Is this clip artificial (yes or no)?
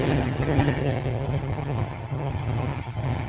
yes